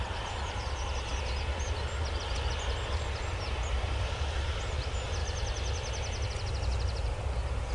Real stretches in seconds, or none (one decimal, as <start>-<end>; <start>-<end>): 0.0-7.7